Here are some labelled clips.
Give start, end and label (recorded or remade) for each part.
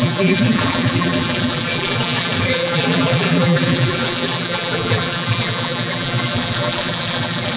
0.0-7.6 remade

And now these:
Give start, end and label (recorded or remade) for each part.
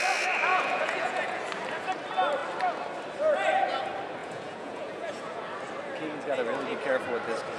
0.0-0.5 recorded; 0.5-1.4 remade; 1.4-4.2 recorded; 4.2-5.4 remade; 5.4-7.6 recorded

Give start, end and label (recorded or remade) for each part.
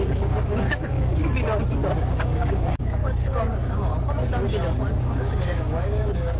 0.0-1.2 remade; 1.2-2.0 recorded; 2.0-3.9 remade; 3.9-4.9 recorded; 4.9-6.4 remade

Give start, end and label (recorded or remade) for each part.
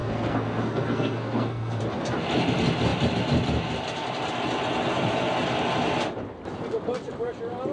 0.0-1.8 remade; 1.8-7.7 recorded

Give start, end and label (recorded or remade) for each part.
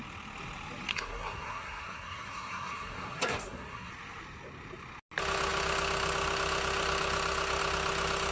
0.0-0.9 recorded; 0.9-3.9 remade; 3.9-8.3 recorded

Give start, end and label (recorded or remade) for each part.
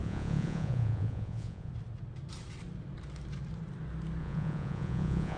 0.0-1.7 remade; 1.7-4.2 recorded; 4.2-5.4 remade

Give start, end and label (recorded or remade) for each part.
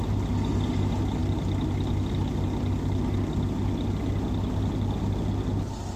0.0-6.0 recorded